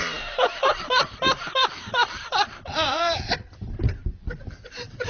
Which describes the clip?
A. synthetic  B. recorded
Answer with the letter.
A